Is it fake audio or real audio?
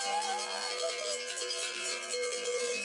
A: fake